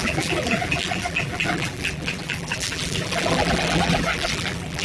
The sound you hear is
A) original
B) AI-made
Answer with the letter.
B